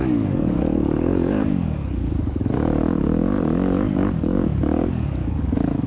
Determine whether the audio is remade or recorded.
remade